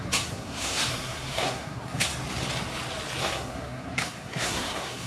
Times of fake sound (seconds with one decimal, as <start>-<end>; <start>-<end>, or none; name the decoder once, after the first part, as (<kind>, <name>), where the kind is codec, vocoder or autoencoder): 0.0-2.1 (codec, SNAC); 3.2-5.1